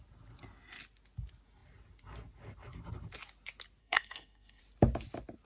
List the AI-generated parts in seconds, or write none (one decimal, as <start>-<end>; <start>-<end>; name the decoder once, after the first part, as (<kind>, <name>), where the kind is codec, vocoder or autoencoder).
3.8-4.6 (codec, SNAC)